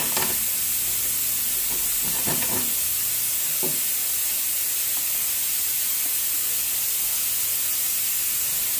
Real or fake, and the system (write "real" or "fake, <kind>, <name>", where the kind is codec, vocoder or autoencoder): real